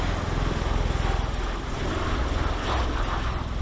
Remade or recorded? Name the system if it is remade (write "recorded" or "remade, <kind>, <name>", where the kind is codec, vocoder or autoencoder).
recorded